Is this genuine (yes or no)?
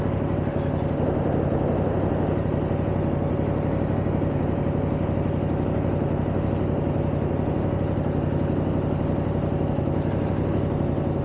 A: yes